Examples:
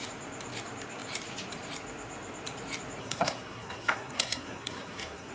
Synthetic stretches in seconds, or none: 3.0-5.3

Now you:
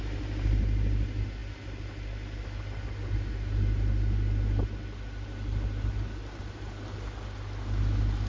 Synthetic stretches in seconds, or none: none

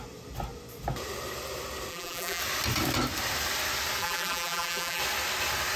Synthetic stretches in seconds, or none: 1.9-2.4; 4.0-5.0